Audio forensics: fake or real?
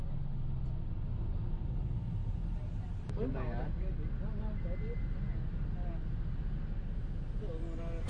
real